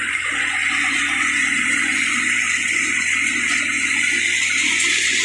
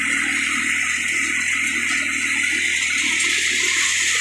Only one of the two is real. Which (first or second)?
second